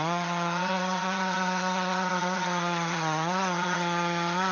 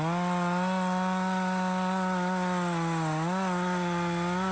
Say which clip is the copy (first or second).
first